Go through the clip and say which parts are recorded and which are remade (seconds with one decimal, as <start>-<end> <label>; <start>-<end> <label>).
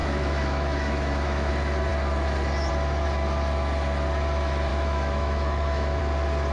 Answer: 0.0-1.5 remade; 1.5-4.7 recorded; 4.7-6.0 remade; 6.0-6.5 recorded